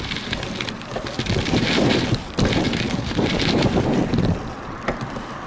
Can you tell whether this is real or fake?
fake